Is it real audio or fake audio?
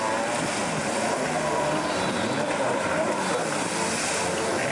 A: real